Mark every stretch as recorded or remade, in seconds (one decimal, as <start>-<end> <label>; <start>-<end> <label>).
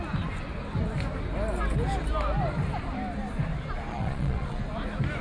0.0-3.9 recorded; 3.9-4.6 remade; 4.6-5.2 recorded